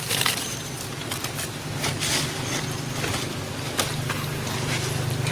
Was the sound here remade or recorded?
recorded